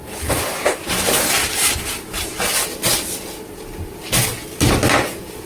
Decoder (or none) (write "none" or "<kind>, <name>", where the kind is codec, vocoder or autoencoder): none